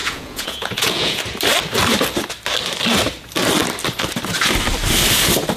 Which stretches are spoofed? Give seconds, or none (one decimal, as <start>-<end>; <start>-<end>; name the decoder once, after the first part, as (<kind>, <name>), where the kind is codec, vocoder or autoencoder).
0.0-1.2 (vocoder, Vocos)